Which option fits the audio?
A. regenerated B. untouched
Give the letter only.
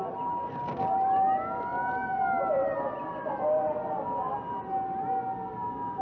B